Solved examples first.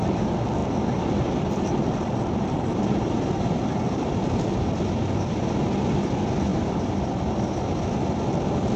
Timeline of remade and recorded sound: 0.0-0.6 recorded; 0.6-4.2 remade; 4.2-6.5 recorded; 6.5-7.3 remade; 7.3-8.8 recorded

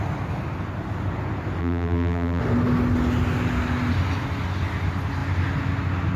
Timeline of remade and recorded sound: 0.0-1.6 recorded; 1.6-2.4 remade; 2.4-6.2 recorded

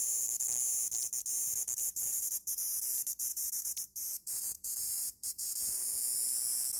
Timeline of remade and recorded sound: 0.0-1.8 recorded; 1.8-2.9 remade; 2.9-3.3 recorded; 3.3-6.0 remade; 6.0-6.8 recorded